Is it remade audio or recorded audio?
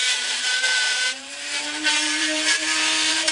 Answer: remade